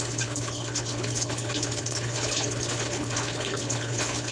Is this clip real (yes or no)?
no